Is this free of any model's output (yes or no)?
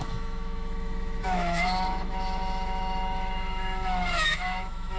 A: no